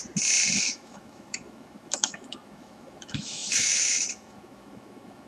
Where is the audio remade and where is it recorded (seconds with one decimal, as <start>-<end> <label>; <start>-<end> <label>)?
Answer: 0.0-0.6 recorded; 0.6-5.3 remade